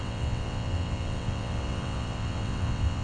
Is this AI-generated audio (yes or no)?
yes